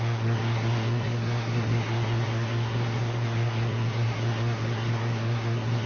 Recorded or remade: remade